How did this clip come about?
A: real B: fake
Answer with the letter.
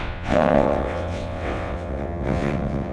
B